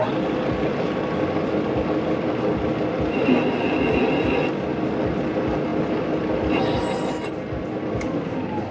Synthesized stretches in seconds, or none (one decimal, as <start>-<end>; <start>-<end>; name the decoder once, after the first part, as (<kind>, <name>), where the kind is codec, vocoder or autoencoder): none